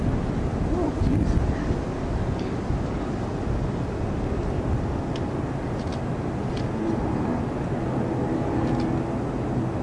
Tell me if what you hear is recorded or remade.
recorded